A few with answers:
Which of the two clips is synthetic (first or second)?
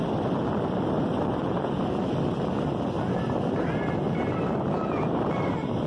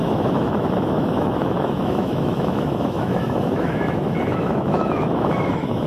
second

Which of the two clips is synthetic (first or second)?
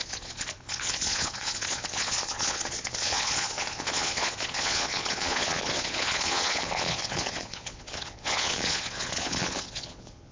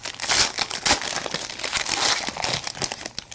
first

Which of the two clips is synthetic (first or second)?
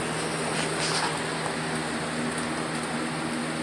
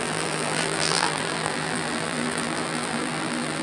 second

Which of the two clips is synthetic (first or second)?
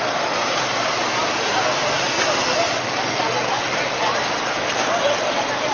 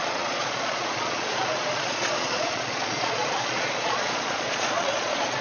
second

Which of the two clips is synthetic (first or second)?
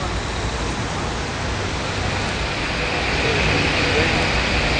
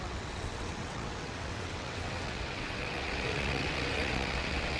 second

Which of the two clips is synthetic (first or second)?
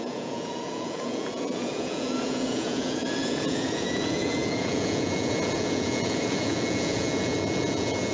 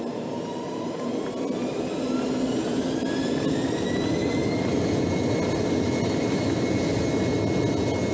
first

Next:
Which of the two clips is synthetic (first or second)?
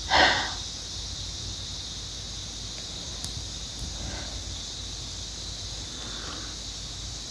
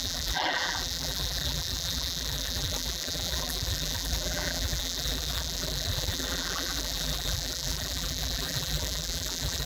second